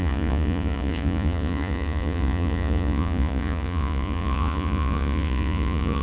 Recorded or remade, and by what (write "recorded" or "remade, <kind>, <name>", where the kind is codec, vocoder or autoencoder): remade, vocoder, Vocos